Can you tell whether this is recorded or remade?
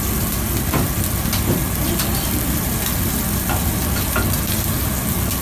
recorded